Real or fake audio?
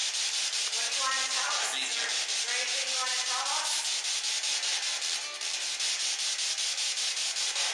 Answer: real